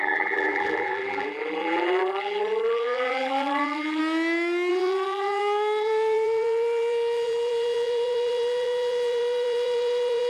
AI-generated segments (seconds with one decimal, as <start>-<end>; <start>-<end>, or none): 0.0-4.0; 4.7-10.3